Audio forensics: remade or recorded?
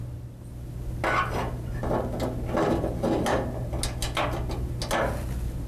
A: recorded